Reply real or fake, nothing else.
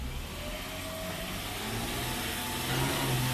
real